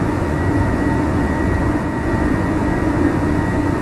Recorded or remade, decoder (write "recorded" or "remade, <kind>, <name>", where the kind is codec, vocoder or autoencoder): remade, vocoder, Vocos